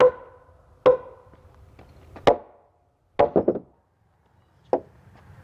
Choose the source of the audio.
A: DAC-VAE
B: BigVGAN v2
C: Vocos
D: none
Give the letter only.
D